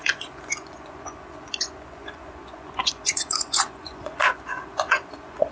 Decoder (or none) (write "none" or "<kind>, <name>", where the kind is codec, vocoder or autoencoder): vocoder, Vocos